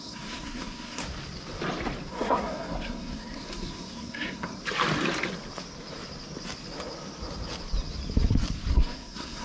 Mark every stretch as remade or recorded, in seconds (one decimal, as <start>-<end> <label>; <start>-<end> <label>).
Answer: 0.0-1.0 remade; 1.0-2.1 recorded; 2.1-4.5 remade; 4.5-8.7 recorded; 8.7-9.4 remade